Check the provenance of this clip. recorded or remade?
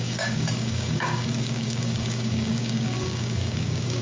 remade